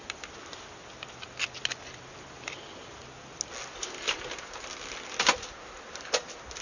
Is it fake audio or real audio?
real